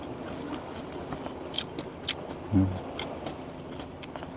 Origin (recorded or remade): recorded